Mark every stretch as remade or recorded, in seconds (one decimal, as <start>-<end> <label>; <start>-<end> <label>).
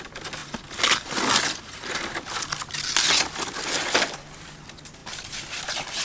0.0-6.0 recorded